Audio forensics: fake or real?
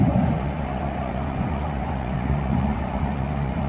fake